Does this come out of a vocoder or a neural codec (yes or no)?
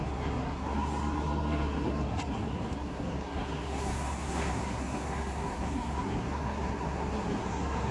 yes